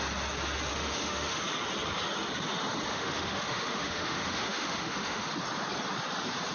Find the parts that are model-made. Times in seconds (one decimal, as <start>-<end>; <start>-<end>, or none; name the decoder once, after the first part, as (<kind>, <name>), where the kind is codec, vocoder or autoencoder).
0.7-1.4 (autoencoder, DAC-VAE); 2.9-5.3